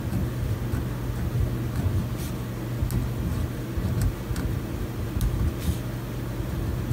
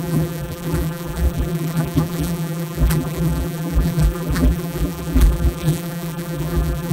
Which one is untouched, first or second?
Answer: first